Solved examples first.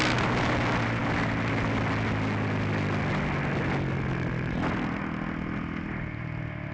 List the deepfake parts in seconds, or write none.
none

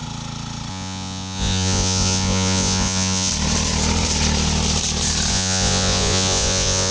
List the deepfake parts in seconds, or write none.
0.7-3.3 (vocoder, Vocos); 5.3-6.9

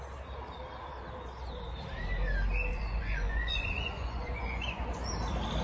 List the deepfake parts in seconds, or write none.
2.7-5.1 (vocoder, Vocos)